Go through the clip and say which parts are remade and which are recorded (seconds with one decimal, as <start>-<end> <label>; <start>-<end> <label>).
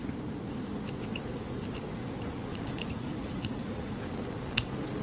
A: 0.0-2.5 recorded; 2.5-4.0 remade; 4.0-5.0 recorded